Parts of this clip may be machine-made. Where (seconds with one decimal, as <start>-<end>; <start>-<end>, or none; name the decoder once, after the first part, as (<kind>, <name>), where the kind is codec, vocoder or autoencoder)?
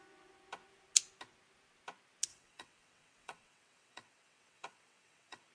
2.3-5.5 (vocoder, WaveNeXt)